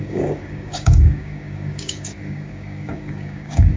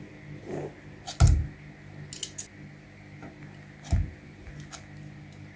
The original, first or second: second